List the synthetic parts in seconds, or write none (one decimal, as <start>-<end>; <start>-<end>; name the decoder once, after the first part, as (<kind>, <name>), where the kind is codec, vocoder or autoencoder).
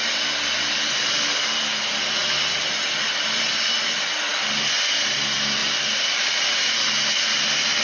none